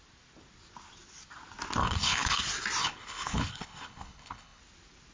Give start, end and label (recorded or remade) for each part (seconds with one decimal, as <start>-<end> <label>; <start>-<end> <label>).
0.0-1.8 recorded; 1.8-2.4 remade; 2.4-2.8 recorded; 2.8-4.6 remade; 4.6-5.1 recorded